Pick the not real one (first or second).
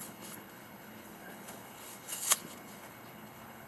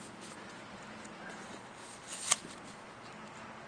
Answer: first